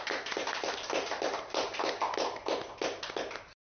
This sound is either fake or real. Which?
real